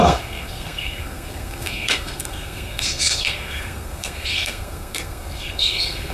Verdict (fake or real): fake